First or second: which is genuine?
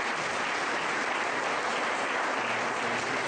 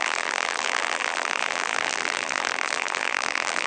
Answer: first